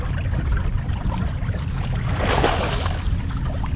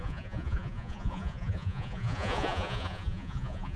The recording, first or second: first